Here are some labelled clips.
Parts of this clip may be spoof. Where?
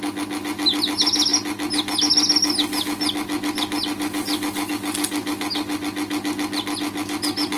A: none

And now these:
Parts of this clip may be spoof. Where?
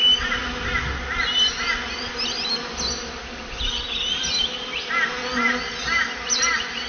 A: none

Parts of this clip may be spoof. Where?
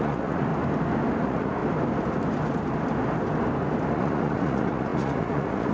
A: 0.0-0.5 (vocoder, Vocos); 1.2-1.6; 3.9-5.7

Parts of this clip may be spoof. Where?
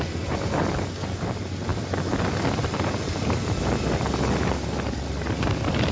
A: none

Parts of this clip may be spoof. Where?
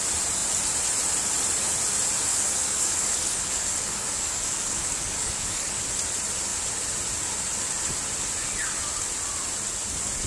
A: 2.3-5.8 (codec, DAC)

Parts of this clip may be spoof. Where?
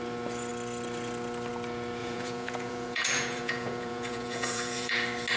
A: 2.0-4.9 (vocoder, Vocos)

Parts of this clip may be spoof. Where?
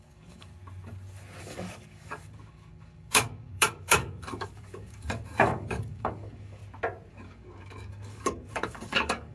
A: 0.0-0.5 (codec, DAC); 1.4-6.6; 7.1-9.3